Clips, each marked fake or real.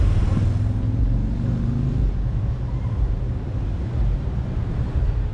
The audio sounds real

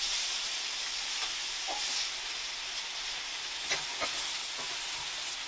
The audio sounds real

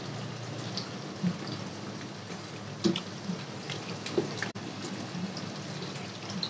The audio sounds fake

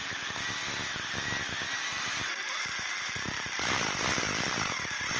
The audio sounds fake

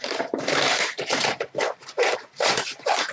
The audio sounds fake